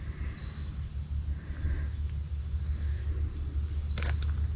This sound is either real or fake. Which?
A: real